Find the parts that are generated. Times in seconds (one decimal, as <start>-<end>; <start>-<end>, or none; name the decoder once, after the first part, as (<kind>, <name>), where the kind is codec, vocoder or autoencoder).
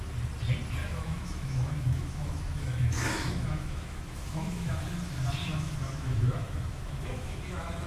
0.8-4.8 (autoencoder, DAC-VAE); 5.4-7.9